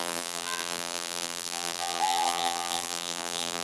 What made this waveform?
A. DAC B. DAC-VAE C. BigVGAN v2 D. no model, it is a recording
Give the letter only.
C